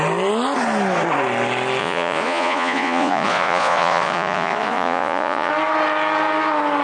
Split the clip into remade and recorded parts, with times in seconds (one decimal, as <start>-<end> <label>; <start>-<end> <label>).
0.0-1.8 recorded; 1.8-5.5 remade; 5.5-6.8 recorded